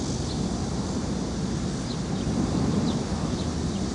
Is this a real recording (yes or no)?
yes